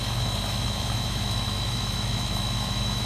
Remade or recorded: remade